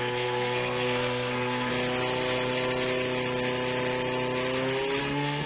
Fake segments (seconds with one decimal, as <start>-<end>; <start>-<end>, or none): 0.0-1.7; 5.0-5.5